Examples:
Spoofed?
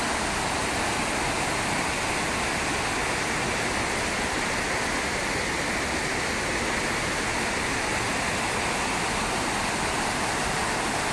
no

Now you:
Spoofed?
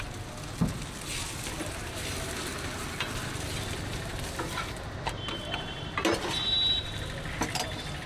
no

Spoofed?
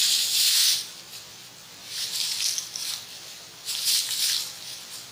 no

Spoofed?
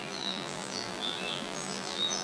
yes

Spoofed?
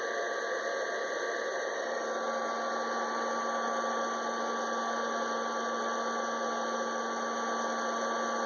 no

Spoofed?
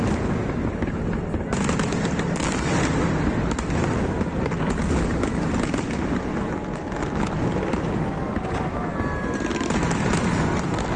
no